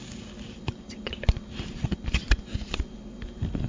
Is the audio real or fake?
real